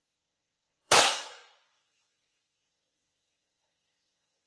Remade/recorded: remade